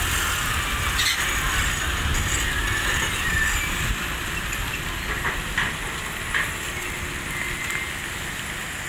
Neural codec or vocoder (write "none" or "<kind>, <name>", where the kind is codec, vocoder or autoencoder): none